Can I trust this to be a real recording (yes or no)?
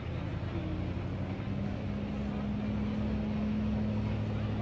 yes